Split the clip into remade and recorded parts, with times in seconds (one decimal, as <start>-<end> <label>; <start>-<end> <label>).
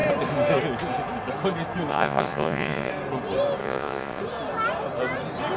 0.0-1.9 recorded; 1.9-2.9 remade; 2.9-3.6 recorded; 3.6-4.2 remade; 4.2-5.6 recorded